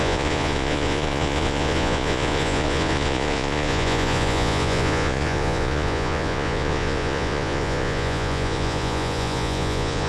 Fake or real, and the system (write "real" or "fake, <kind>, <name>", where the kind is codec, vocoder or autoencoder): fake, vocoder, Vocos